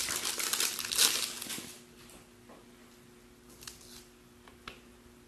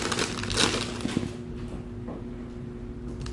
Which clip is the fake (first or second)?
first